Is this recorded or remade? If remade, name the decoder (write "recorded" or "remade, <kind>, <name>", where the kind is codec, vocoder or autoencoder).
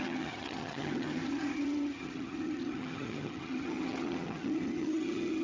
remade, vocoder, HiFi-GAN